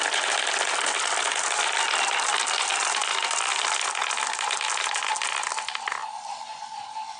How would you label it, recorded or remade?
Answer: recorded